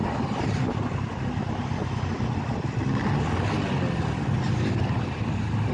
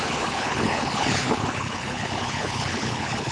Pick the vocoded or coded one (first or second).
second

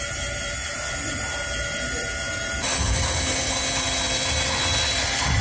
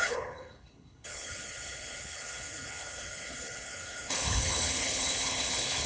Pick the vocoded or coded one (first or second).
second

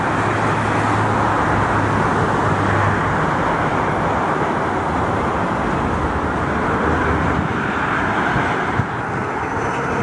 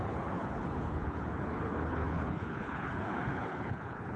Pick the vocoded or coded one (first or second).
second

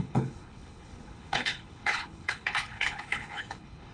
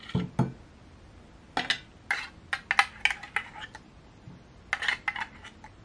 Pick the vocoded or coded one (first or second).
first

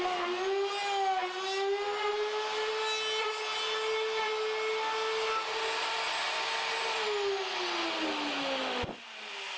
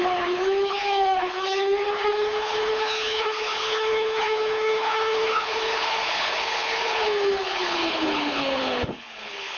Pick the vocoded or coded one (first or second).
second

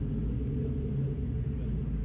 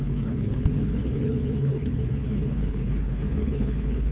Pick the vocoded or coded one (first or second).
second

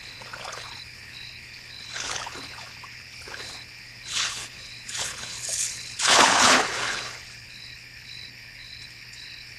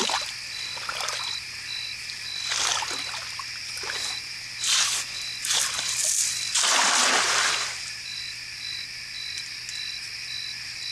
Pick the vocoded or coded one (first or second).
first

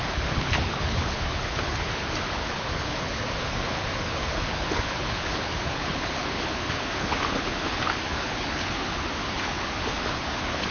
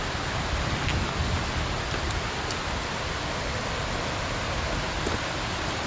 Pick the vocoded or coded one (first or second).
first